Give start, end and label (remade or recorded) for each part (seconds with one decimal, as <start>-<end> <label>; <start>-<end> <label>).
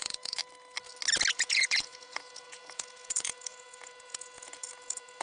0.0-0.4 remade; 0.4-1.3 recorded; 1.3-5.2 remade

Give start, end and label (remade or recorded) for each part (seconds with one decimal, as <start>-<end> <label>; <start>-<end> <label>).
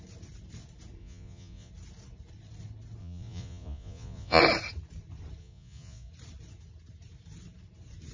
0.0-1.0 recorded; 1.0-1.7 remade; 1.7-3.0 recorded; 3.0-4.4 remade; 4.4-5.4 recorded; 5.4-6.1 remade; 6.1-8.1 recorded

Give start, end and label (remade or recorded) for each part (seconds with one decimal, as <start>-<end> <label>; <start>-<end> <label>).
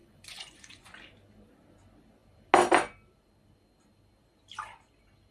0.0-0.9 remade; 0.9-5.3 recorded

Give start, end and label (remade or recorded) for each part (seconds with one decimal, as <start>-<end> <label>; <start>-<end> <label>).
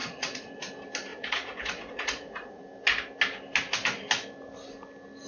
0.0-0.5 remade; 0.5-1.1 recorded; 1.1-2.6 remade; 2.6-5.3 recorded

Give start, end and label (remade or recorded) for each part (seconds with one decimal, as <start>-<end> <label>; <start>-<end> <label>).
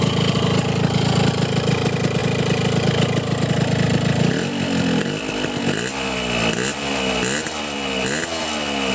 0.0-8.9 recorded